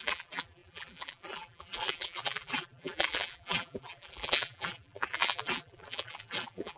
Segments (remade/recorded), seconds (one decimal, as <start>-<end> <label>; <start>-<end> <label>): 0.0-6.8 remade